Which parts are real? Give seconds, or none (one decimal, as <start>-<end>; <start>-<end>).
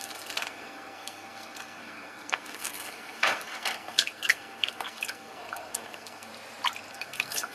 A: 6.3-6.9